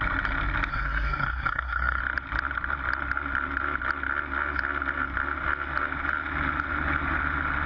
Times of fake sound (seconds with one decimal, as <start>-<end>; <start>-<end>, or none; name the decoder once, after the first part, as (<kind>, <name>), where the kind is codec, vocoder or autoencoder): 0.7-2.0 (codec, SNAC)